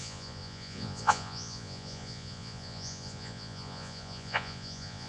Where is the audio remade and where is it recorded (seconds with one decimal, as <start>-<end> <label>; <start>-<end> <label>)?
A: 0.0-5.1 remade